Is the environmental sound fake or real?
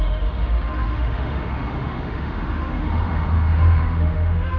fake